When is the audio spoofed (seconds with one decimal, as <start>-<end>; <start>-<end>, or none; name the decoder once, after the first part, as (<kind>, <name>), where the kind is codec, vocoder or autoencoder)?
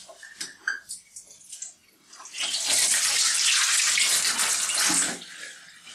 none